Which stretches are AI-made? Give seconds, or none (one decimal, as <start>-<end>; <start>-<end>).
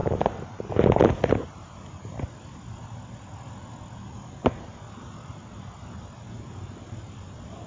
none